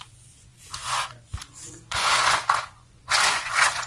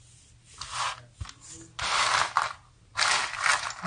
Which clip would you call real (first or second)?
second